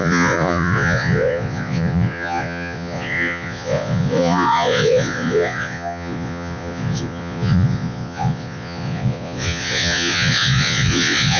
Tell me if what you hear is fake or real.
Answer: fake